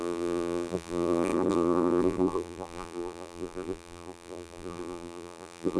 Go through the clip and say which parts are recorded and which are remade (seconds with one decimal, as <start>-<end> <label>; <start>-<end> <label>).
0.0-5.8 remade